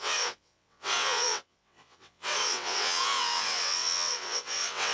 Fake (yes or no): yes